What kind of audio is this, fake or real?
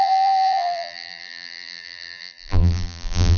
fake